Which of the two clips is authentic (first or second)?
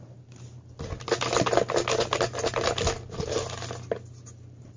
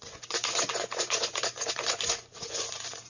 first